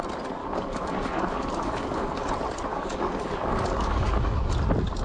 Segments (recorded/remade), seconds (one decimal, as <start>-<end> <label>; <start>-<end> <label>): 0.0-0.4 recorded; 0.4-2.3 remade; 2.3-2.7 recorded; 2.7-4.5 remade; 4.5-5.0 recorded